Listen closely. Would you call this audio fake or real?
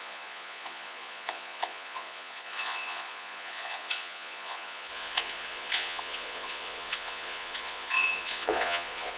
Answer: fake